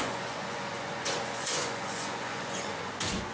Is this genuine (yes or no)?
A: no